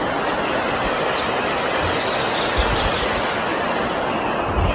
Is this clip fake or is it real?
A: real